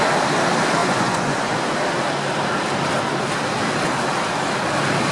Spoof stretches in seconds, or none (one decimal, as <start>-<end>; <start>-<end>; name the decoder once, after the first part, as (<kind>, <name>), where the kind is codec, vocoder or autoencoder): 0.8-1.8 (vocoder, Vocos)